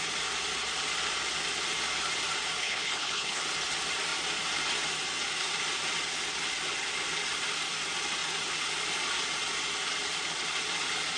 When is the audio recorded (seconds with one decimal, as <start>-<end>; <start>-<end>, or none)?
0.0-2.6; 3.4-11.2

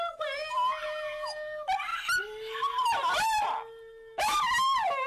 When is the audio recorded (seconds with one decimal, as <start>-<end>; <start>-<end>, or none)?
0.0-5.1

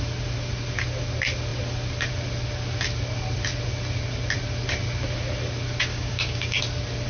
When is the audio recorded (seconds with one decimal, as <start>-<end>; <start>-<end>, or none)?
0.0-5.9; 6.6-7.1

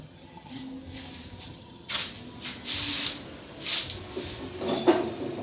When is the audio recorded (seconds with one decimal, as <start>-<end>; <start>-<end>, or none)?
0.6-1.4; 2.0-5.4

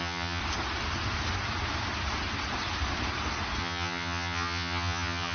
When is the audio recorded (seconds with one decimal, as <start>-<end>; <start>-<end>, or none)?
0.4-3.6

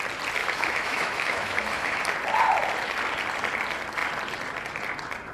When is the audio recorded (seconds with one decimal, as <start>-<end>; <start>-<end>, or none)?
0.0-0.4; 2.0-5.3

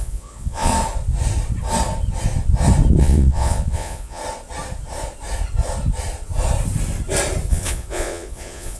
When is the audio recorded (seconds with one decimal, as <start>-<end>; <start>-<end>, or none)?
0.7-3.0; 4.2-7.5

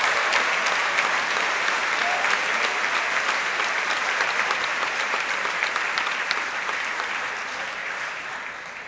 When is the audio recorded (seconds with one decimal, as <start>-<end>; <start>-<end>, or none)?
0.0-4.7; 7.0-7.8; 8.3-8.9